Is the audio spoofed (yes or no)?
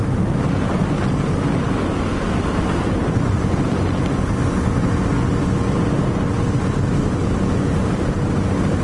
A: no